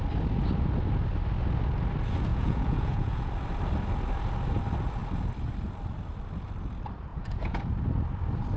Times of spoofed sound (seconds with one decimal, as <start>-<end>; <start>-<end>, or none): 2.3-3.3; 7.1-7.6